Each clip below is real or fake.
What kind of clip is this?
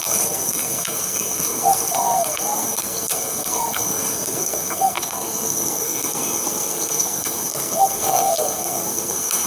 fake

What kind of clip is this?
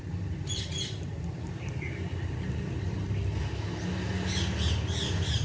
real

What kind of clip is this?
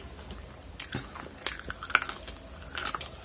real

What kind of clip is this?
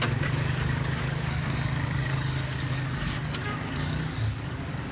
fake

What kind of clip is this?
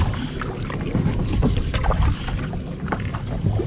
real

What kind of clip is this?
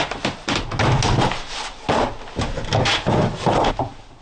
real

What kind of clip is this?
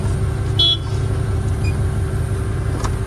real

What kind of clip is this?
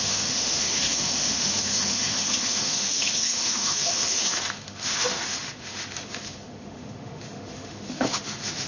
fake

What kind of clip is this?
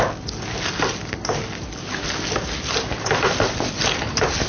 real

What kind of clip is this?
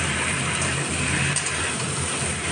fake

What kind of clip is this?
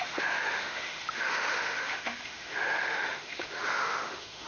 fake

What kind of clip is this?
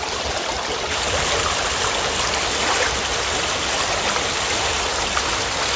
real